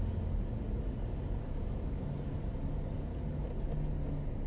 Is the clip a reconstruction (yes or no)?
no